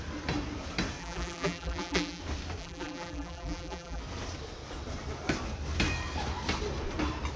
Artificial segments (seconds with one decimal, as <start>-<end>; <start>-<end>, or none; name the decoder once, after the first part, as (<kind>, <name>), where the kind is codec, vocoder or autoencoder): 1.0-2.2 (vocoder, BigVGAN v2); 2.6-4.0